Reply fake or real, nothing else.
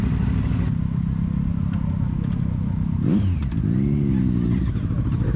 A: real